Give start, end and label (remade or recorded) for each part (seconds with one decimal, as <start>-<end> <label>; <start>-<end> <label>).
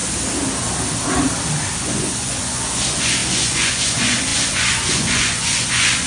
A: 0.0-1.8 recorded; 1.8-6.1 remade